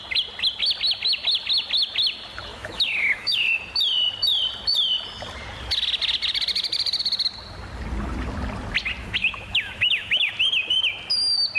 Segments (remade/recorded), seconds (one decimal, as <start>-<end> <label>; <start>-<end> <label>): 0.0-2.5 recorded; 2.5-3.6 remade; 3.6-9.0 recorded; 9.0-10.3 remade; 10.3-11.6 recorded